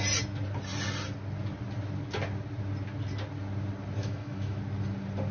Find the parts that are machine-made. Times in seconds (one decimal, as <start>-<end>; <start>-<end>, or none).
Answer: 4.0-4.6